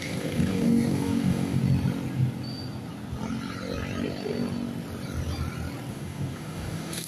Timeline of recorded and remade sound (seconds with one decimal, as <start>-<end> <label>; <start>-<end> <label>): 0.0-1.6 remade; 1.6-5.9 recorded; 5.9-7.1 remade